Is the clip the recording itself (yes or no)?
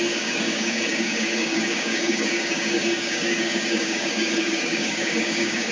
no